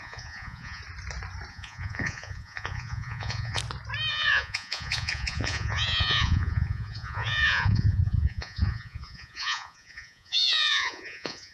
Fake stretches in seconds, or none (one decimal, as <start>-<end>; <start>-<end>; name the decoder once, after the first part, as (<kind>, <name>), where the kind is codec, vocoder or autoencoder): 0.0-0.8 (vocoder, Vocos); 1.5-3.6; 4.1-11.5